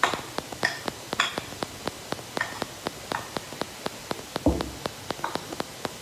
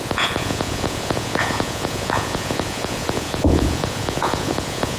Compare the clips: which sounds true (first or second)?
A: first